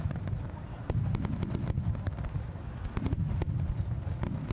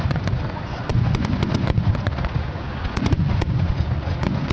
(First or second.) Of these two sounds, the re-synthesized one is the second